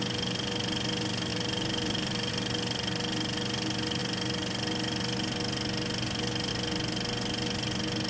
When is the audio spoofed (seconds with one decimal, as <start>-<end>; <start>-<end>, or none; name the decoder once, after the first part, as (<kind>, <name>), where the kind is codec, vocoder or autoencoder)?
1.3-2.3 (vocoder, BigVGAN v2)